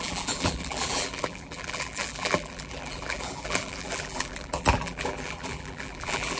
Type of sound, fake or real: fake